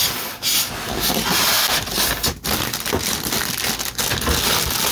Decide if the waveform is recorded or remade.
recorded